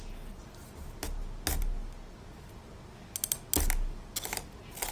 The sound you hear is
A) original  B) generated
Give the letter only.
A